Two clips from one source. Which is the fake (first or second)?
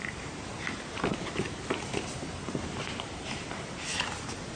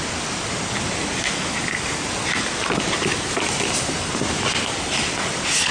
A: first